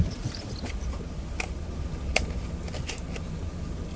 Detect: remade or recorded recorded